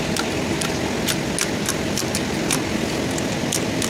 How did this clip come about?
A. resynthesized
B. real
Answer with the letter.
B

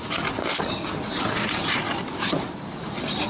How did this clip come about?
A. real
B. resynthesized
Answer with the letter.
A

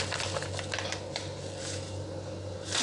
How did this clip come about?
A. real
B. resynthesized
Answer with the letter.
A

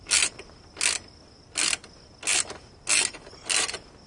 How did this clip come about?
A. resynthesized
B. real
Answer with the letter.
B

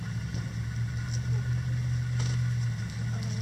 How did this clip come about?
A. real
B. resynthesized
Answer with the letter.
A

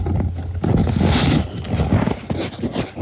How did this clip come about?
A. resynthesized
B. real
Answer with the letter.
B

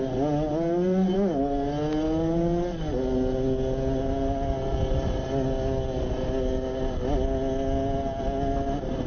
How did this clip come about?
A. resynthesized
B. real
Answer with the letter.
B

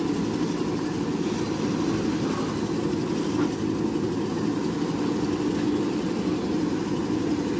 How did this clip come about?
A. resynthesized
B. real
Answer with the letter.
B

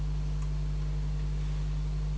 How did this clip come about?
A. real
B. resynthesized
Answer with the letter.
A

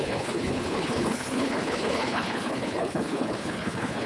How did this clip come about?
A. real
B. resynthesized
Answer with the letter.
B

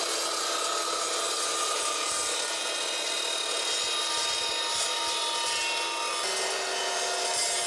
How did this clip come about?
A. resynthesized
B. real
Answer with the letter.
B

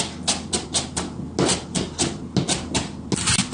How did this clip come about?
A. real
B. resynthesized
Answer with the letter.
A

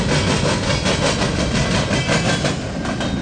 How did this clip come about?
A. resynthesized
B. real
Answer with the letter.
B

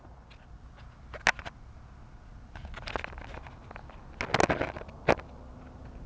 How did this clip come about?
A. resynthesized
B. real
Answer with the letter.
B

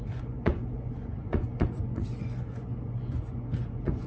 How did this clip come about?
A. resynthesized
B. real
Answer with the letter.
A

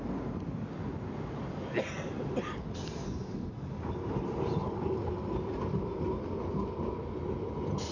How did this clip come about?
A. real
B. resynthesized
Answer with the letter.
A